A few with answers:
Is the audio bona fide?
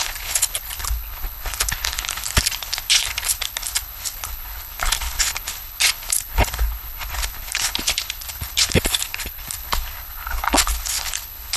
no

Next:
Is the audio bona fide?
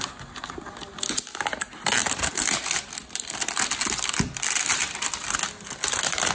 yes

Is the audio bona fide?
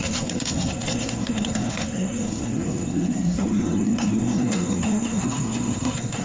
no